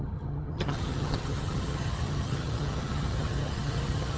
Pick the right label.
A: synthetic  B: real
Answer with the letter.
A